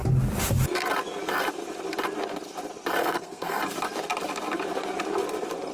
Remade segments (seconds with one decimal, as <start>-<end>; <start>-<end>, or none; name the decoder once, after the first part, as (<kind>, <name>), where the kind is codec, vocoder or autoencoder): 3.0-3.6 (codec, SNAC)